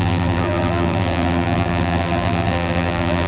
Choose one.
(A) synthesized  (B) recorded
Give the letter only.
A